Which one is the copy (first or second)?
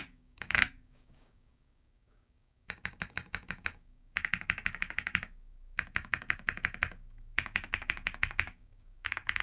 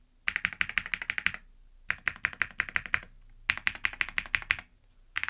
first